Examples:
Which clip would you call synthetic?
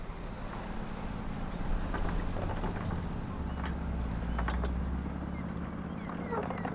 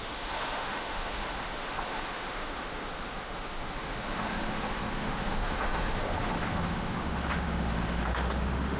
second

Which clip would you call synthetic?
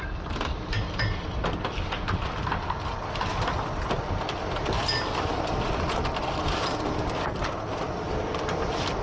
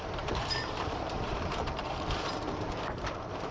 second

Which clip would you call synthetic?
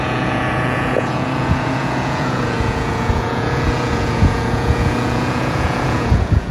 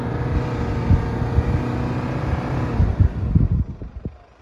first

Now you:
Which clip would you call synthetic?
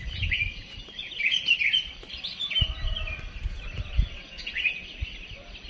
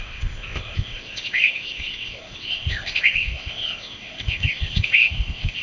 second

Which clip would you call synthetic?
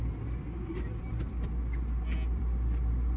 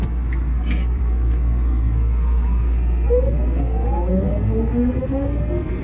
second